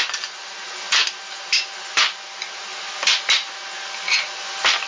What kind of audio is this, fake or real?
real